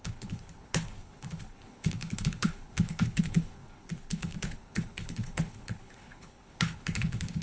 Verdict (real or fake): fake